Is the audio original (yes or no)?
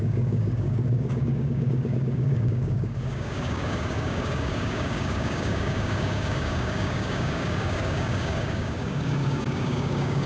no